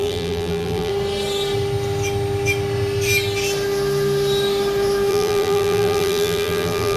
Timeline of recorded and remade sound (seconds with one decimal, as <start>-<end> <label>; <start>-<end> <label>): 0.0-0.9 remade; 0.9-5.1 recorded; 5.1-7.0 remade